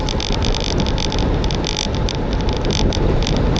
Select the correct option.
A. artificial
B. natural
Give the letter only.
B